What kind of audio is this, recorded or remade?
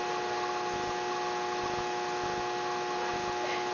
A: recorded